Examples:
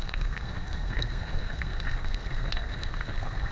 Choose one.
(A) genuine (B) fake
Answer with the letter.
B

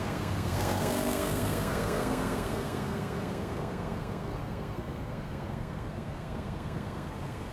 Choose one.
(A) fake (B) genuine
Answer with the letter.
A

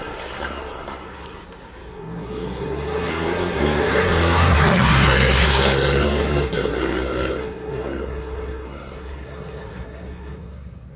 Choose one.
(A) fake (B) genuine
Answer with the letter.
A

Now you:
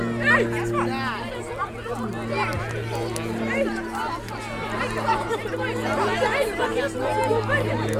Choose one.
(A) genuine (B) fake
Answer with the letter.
A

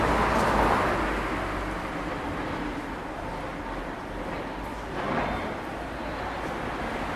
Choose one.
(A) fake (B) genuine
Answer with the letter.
B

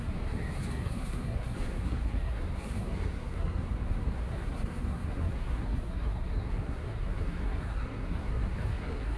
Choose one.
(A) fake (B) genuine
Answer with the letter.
A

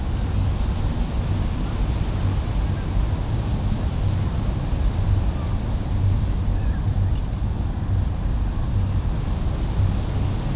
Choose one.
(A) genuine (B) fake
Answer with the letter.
A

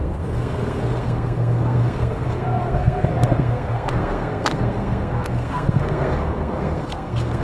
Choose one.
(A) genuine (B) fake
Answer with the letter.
B